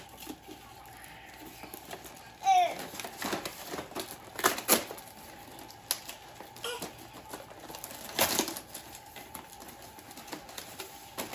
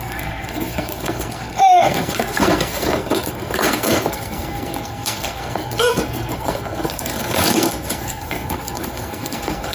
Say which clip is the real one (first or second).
first